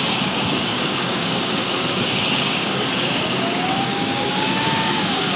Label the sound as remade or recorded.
remade